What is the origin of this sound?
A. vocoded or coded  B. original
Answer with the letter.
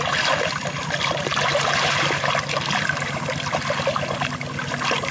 B